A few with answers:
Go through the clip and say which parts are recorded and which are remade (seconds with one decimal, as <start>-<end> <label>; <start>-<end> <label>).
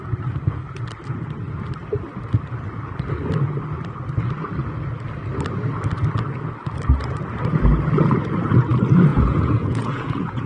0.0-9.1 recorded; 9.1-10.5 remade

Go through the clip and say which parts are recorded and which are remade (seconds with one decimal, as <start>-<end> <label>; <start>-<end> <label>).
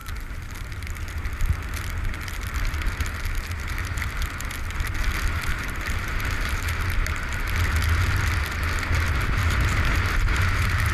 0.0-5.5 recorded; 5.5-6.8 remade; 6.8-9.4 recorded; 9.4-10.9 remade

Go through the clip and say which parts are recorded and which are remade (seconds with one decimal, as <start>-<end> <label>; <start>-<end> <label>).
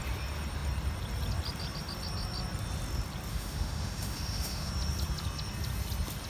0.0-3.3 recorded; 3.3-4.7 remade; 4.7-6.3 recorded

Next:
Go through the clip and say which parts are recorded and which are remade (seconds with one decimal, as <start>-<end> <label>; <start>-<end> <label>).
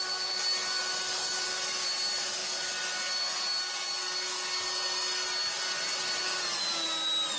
0.0-7.4 recorded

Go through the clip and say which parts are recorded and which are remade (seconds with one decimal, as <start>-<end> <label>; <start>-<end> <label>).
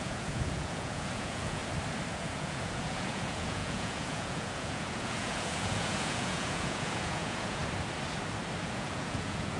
0.0-1.6 remade; 1.6-2.1 recorded; 2.1-7.6 remade; 7.6-8.6 recorded; 8.6-9.6 remade